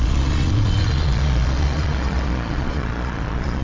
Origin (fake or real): fake